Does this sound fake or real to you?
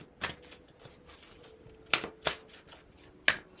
real